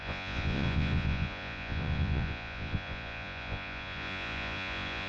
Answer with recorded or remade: remade